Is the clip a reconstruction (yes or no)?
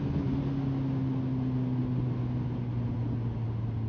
no